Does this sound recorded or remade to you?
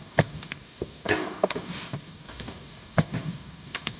remade